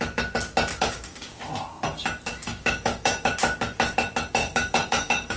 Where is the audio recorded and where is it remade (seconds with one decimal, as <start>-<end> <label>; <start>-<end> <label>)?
0.0-0.7 recorded; 0.7-1.4 remade; 1.4-2.3 recorded; 2.3-3.3 remade; 3.3-4.4 recorded; 4.4-5.4 remade